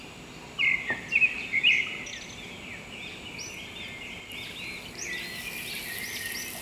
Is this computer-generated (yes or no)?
no